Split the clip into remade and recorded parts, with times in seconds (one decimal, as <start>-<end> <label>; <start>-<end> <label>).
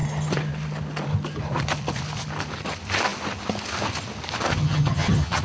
0.0-4.5 recorded; 4.5-5.4 remade